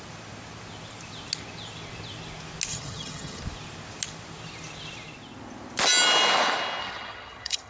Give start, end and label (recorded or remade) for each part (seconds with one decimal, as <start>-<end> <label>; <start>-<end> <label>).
0.0-2.7 recorded; 2.7-3.4 remade; 3.4-6.8 recorded; 6.8-7.7 remade